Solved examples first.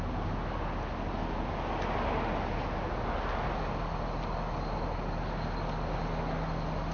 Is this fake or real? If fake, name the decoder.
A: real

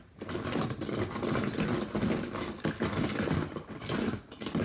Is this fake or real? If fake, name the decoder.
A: real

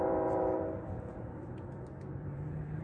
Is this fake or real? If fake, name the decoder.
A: fake, vocoder, BigVGAN v2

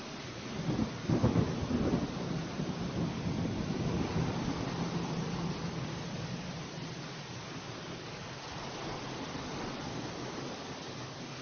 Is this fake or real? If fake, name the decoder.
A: real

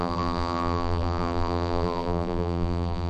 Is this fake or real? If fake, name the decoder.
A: fake, vocoder, BigVGAN v2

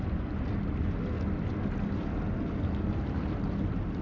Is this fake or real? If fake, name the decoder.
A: real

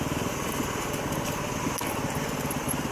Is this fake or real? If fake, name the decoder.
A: real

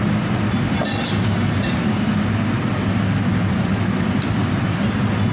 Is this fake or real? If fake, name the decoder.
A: real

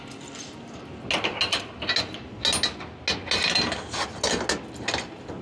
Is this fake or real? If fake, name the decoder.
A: real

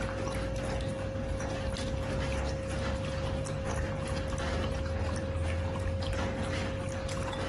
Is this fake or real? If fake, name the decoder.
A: real